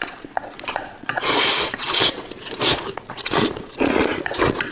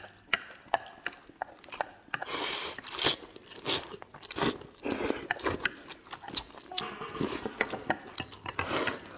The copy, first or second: first